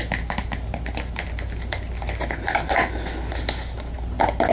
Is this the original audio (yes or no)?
yes